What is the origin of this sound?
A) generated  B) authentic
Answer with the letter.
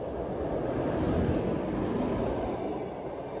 B